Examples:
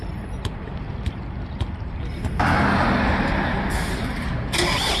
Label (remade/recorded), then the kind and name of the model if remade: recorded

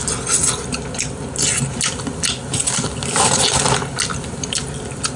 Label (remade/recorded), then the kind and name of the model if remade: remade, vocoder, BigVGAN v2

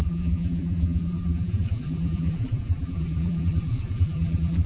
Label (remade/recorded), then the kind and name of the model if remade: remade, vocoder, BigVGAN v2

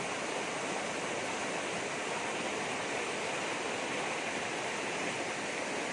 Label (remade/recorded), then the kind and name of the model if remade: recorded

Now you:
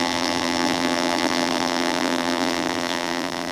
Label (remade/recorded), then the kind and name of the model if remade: remade, vocoder, BigVGAN v2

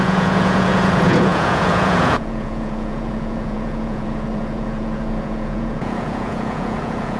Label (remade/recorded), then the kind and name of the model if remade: remade, vocoder, Vocos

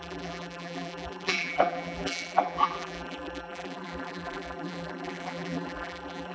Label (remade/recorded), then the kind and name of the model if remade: remade, vocoder, BigVGAN v2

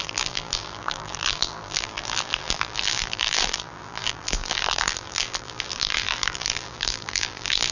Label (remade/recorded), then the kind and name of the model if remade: remade, vocoder, BigVGAN v2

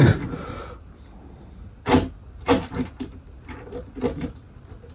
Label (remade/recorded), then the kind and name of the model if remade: recorded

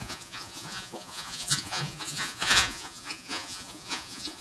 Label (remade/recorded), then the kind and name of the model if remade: remade, vocoder, Vocos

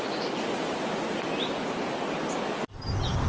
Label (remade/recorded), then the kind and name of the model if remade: recorded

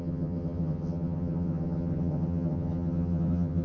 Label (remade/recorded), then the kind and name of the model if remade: remade, vocoder, HiFi-GAN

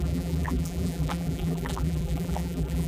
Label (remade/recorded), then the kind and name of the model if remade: remade, vocoder, BigVGAN v2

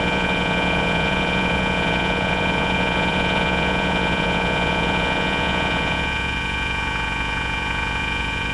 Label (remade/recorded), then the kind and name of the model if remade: remade, vocoder, Vocos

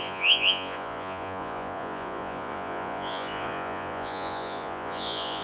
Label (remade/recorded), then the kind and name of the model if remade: remade, vocoder, Vocos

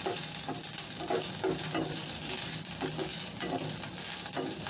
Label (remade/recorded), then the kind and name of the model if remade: recorded